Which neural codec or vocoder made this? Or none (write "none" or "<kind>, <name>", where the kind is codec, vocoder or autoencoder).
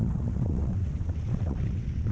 vocoder, WaveNeXt